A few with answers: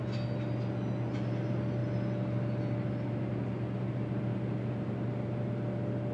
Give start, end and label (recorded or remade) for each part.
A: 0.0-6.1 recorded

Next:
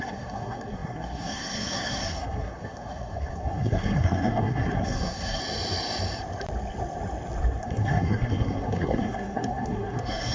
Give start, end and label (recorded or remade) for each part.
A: 0.0-5.4 remade; 5.4-7.6 recorded; 7.6-10.3 remade

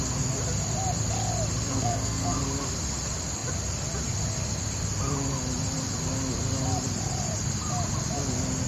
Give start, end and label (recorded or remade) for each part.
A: 0.0-1.7 recorded; 1.7-2.4 remade; 2.4-8.7 recorded